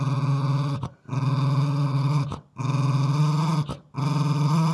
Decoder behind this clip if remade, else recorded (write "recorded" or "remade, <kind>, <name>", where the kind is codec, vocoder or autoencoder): recorded